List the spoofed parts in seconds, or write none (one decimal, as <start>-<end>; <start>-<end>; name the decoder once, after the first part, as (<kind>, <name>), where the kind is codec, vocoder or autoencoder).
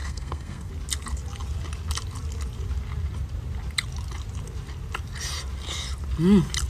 0.0-0.7 (codec, SNAC)